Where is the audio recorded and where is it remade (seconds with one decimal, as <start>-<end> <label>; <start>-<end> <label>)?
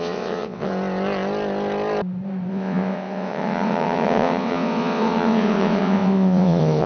0.0-0.7 remade; 0.7-2.5 recorded; 2.5-6.9 remade